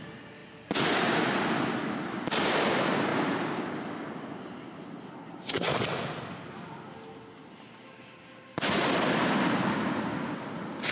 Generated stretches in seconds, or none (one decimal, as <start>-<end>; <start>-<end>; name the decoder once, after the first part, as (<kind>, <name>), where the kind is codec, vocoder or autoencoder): none